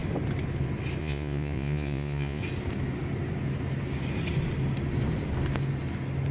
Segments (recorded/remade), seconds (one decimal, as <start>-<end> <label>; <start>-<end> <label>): 0.0-1.0 recorded; 1.0-2.4 remade; 2.4-6.3 recorded